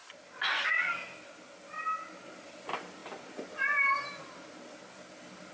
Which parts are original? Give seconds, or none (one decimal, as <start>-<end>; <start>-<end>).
0.0-5.5